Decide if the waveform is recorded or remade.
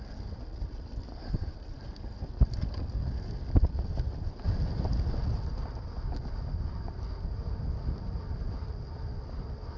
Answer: recorded